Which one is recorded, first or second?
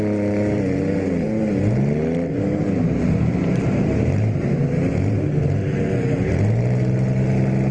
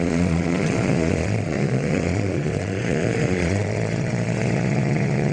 first